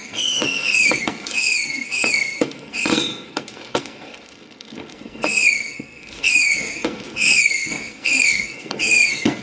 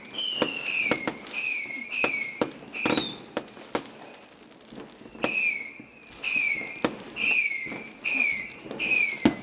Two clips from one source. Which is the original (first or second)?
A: second